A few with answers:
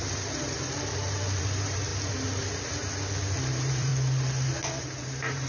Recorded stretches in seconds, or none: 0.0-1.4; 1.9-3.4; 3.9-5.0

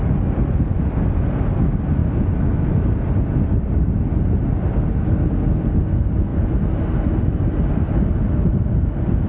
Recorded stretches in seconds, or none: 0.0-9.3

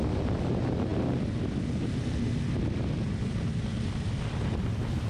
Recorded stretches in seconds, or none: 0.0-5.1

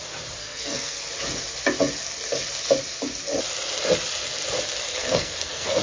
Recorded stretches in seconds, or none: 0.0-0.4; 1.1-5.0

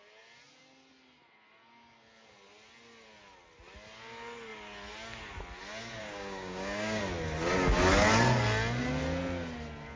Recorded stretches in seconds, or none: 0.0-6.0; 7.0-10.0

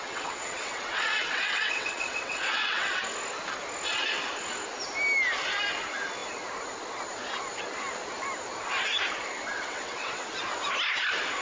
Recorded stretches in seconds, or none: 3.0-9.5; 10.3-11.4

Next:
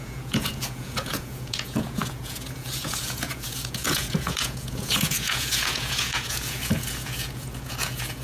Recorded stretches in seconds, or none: none

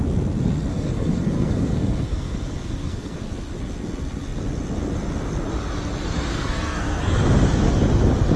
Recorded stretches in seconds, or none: 0.0-0.7; 3.2-6.3; 7.0-8.4